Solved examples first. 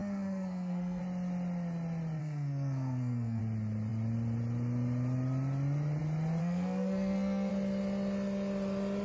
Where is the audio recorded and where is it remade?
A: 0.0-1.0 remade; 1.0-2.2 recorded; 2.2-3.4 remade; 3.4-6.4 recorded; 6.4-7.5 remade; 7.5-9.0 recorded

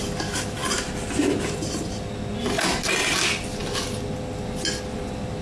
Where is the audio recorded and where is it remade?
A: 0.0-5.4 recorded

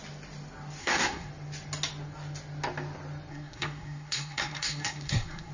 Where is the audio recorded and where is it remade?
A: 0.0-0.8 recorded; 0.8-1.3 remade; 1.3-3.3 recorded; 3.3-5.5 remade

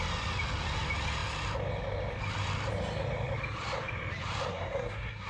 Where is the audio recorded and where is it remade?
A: 0.0-4.5 recorded; 4.5-5.3 remade

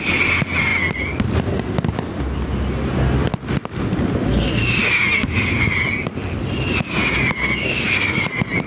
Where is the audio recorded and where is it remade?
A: 0.0-8.7 recorded